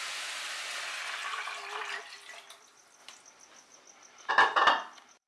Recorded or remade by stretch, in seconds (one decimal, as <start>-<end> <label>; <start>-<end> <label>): 0.0-5.3 recorded